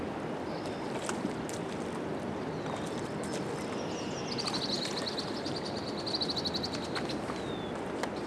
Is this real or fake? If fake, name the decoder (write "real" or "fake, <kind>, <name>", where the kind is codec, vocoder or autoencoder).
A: real